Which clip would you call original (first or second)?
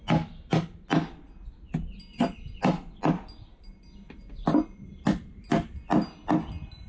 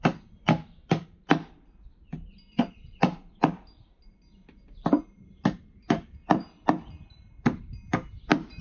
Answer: first